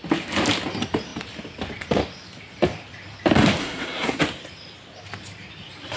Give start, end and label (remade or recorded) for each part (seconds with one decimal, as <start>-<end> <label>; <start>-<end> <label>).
0.0-3.6 recorded; 3.6-4.2 remade; 4.2-6.0 recorded